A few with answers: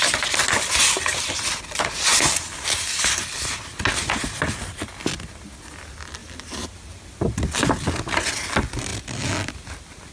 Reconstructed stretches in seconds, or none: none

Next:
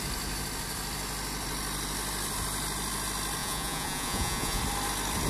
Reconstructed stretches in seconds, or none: 3.4-4.6 (vocoder, Vocos)

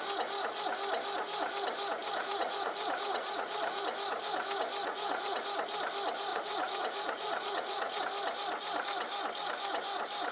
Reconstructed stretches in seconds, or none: 2.0-3.8 (vocoder, Vocos); 4.8-5.4; 6.3-8.0

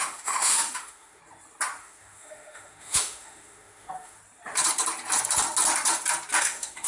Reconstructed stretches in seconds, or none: 0.0-1.2 (autoencoder, DAC-VAE); 1.8-4.2; 6.4-6.9

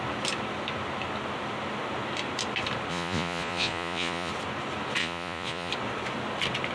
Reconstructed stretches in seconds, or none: 2.9-4.3 (vocoder, Vocos); 5.0-5.7

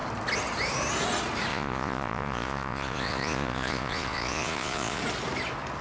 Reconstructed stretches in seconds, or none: 1.5-5.0 (vocoder, Vocos)

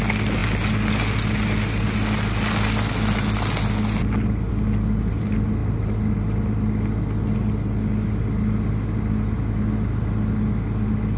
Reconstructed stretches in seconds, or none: none